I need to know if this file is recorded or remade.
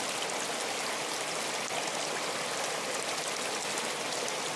recorded